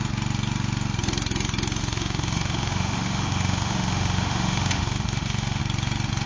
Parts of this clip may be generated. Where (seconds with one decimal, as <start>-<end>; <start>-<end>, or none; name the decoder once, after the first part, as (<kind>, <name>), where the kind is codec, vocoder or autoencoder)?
1.8-5.6 (autoencoder, DAC-VAE)